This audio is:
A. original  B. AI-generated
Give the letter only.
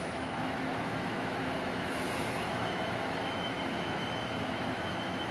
B